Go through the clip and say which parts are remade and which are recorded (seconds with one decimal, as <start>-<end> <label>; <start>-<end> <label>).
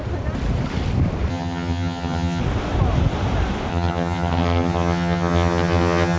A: 0.0-1.3 recorded; 1.3-2.4 remade; 2.4-3.7 recorded; 3.7-6.2 remade